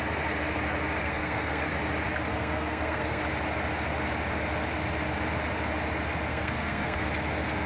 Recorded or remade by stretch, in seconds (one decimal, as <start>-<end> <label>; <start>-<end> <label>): 0.0-1.0 recorded; 1.0-1.7 remade; 1.7-2.3 recorded; 2.3-3.2 remade; 3.2-6.3 recorded; 6.3-7.1 remade; 7.1-7.7 recorded